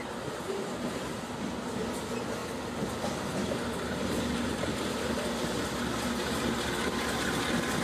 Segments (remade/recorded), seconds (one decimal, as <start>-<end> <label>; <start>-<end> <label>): 0.0-7.8 recorded